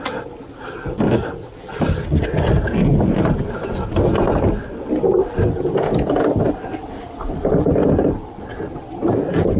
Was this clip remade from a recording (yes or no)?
no